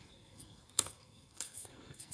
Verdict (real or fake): fake